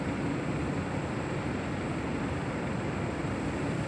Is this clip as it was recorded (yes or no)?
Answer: yes